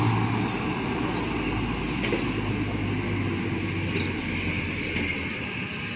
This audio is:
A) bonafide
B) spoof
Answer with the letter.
A